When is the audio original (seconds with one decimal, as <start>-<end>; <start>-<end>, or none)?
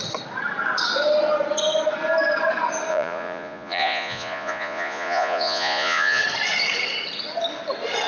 0.0-2.9; 6.2-8.1